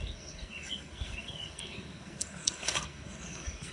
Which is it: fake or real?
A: fake